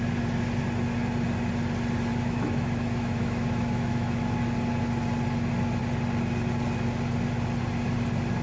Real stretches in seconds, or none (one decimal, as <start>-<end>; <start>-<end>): 0.0-2.1; 4.4-8.4